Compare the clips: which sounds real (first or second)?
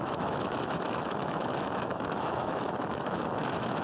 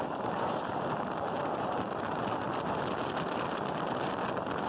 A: second